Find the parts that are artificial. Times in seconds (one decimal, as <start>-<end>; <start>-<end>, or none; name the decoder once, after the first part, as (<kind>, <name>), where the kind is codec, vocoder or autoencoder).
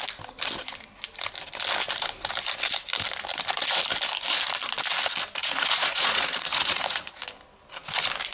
5.4-7.2 (vocoder, Vocos)